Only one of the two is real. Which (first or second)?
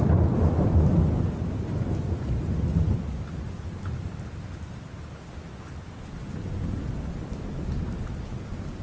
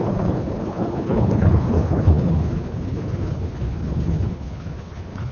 first